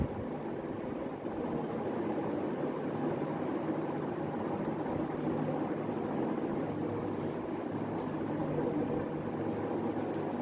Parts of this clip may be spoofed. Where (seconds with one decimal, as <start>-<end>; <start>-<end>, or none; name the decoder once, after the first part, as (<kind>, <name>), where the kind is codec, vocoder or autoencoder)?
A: 1.6-4.2 (vocoder, BigVGAN v2)